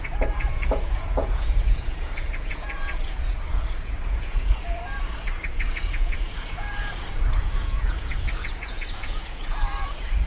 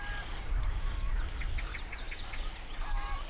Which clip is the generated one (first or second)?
first